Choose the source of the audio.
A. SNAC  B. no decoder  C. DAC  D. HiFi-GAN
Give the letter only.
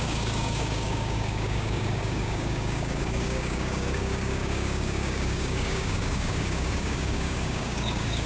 C